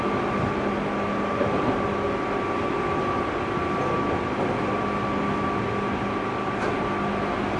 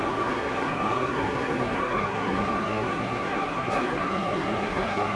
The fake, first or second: second